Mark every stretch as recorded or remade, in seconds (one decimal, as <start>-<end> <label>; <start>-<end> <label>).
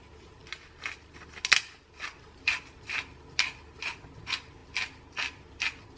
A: 0.0-6.0 recorded